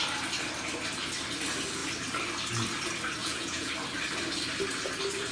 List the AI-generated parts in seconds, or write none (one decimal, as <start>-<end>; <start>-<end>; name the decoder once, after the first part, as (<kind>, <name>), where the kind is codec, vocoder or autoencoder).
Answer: 3.2-3.7 (vocoder, Vocos)